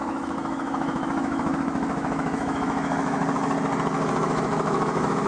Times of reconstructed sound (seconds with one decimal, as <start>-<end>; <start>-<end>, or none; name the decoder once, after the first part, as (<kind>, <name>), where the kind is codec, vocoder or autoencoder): 0.0-3.2 (autoencoder, DAC-VAE); 4.2-5.3